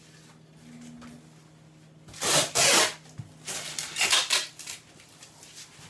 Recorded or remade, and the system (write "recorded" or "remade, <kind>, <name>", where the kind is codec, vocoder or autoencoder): recorded